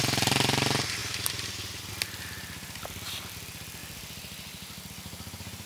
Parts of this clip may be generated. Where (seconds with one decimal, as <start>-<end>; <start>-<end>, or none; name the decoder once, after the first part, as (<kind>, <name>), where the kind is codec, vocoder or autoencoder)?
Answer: none